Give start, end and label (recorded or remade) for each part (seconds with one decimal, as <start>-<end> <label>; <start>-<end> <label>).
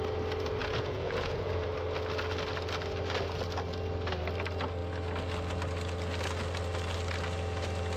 0.0-0.6 recorded; 0.6-1.7 remade; 1.7-8.0 recorded